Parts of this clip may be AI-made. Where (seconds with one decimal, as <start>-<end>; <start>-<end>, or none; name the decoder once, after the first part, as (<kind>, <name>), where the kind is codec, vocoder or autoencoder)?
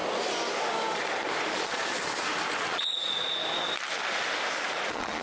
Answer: 1.5-1.9 (vocoder, Vocos); 2.6-3.4; 4.7-5.2